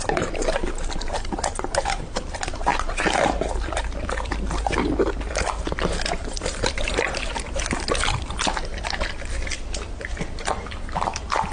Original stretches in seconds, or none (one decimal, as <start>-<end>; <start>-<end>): 0.6-2.0